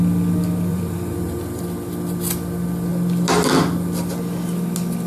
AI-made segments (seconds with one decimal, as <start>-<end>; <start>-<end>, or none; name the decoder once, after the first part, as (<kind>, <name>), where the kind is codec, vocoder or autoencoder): 0.7-1.6 (vocoder, BigVGAN v2)